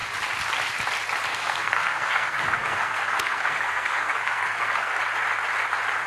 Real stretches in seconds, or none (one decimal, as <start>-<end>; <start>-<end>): 0.0-1.3; 5.0-6.1